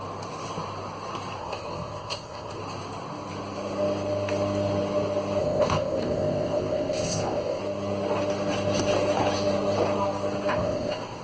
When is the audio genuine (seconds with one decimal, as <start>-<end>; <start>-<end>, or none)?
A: 0.0-1.4; 2.6-5.4; 7.6-10.5